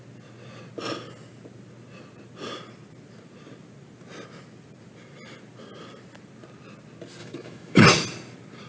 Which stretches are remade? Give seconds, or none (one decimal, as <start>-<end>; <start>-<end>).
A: 7.2-7.8